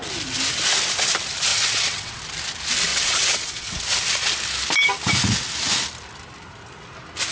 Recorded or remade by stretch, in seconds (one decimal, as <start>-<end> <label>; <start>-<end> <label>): 0.0-1.5 recorded; 1.5-2.2 remade; 2.2-2.9 recorded; 2.9-3.8 remade; 3.8-7.3 recorded